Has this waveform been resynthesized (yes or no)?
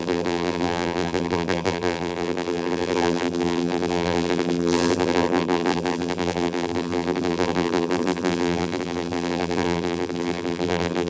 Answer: yes